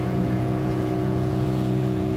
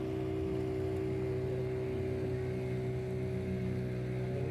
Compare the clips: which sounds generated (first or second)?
first